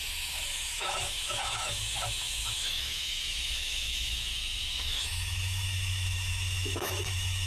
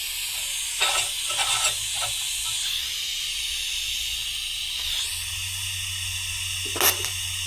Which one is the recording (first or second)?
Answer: second